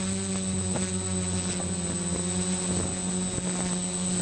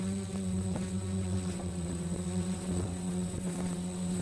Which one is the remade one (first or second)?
second